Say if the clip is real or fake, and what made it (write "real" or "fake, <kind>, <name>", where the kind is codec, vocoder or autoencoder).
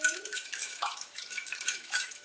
fake, autoencoder, DAC-VAE